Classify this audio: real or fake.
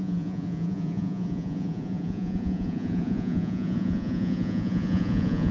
fake